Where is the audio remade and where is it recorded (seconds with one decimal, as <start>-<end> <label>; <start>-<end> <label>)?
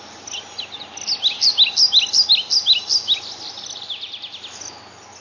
0.0-5.2 recorded